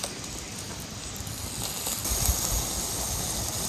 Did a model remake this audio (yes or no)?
no